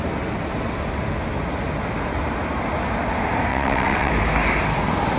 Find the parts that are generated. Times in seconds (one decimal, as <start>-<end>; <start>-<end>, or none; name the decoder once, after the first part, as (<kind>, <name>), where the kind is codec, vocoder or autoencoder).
3.5-4.1 (vocoder, WaveNeXt)